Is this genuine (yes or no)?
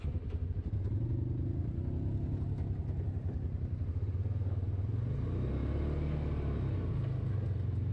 yes